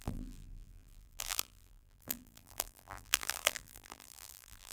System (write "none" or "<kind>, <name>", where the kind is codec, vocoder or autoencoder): vocoder, BigVGAN v2